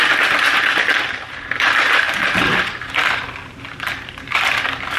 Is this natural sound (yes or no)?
no